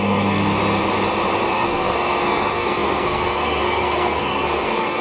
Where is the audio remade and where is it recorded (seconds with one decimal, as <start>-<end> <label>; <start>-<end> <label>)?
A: 0.0-0.4 remade; 0.4-1.5 recorded; 1.5-5.0 remade